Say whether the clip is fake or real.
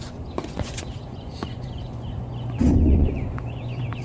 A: fake